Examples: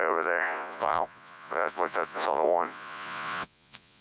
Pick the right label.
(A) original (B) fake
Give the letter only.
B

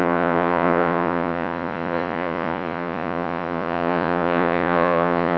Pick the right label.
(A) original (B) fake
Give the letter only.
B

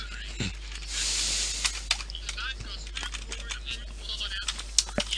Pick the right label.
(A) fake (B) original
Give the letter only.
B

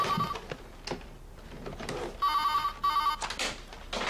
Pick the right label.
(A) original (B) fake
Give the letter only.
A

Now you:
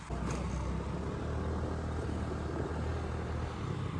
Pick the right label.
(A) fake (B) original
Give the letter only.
B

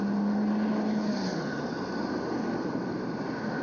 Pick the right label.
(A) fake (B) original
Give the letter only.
B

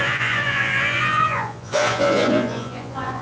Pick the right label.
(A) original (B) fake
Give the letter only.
B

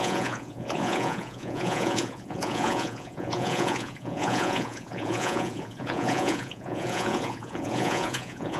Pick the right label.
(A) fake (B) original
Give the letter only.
A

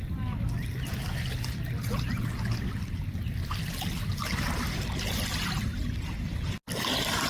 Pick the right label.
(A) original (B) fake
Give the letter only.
A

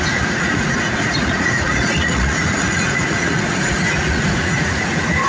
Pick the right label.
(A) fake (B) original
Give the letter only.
A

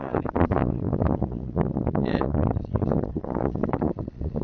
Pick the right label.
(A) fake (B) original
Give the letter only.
A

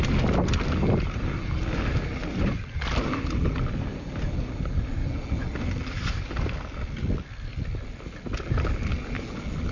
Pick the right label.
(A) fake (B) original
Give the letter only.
B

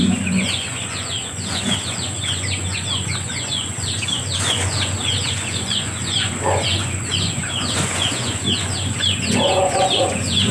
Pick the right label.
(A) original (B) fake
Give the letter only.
B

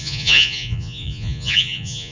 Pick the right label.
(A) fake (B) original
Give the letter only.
A